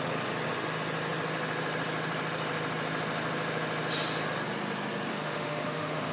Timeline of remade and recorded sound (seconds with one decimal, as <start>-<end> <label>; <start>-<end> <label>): 0.0-5.1 recorded; 5.1-6.1 remade